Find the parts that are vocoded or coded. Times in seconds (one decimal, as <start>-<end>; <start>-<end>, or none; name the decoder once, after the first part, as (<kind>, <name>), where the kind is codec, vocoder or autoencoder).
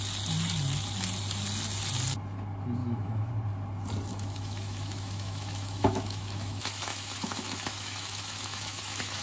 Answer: 2.8-3.3 (autoencoder, DAC-VAE); 4.1-9.2